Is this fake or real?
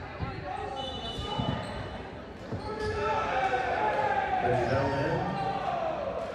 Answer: fake